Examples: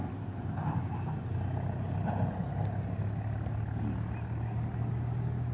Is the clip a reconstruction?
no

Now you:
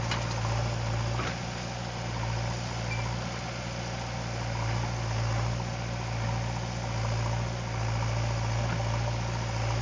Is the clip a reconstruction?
no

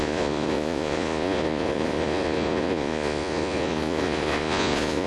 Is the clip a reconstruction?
yes